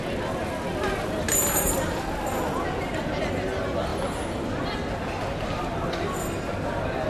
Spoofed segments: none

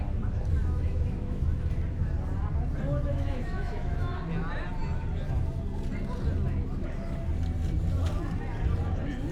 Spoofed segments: 0.6-1.4 (autoencoder, DAC-VAE); 3.1-4.2

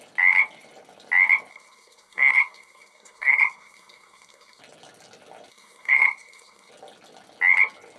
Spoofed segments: 1.5-4.6 (codec, SNAC); 5.5-6.7

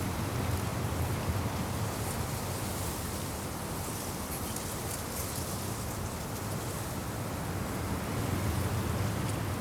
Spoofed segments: none

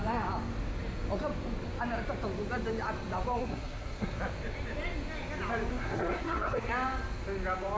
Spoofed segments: 3.4-4.2 (codec, SNAC); 5.7-6.7

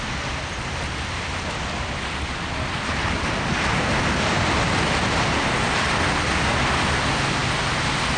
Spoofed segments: none